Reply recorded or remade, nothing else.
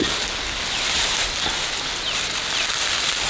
recorded